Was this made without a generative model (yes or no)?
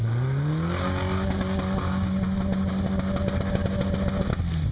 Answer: yes